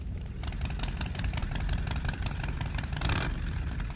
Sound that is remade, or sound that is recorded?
remade